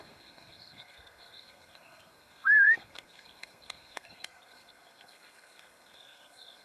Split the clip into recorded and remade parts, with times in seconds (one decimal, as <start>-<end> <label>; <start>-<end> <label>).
0.0-6.6 remade